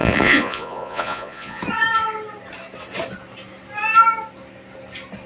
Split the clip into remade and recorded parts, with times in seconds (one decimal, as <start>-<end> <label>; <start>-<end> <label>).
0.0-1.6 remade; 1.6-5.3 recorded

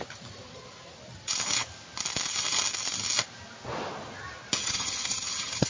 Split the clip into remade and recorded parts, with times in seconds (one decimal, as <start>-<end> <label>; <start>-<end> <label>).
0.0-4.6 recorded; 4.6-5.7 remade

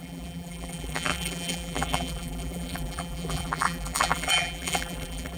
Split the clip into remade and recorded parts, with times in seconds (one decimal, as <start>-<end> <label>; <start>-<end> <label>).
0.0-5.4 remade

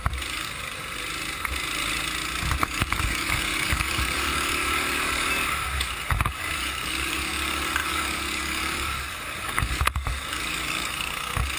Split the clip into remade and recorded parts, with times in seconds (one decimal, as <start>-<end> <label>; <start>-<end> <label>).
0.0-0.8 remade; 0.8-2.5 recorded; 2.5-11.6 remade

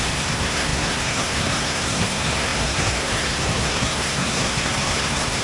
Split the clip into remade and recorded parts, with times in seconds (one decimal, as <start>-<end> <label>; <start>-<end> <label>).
0.0-5.4 remade

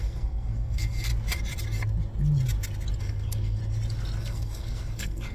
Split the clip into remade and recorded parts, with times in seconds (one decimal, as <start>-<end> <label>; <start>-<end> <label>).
0.0-1.1 remade; 1.1-3.0 recorded; 3.0-3.6 remade; 3.6-4.2 recorded; 4.2-5.3 remade